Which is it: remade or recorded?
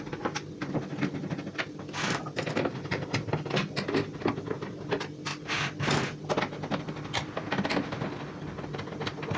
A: recorded